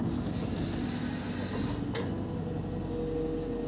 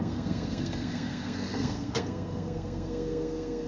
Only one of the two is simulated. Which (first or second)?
second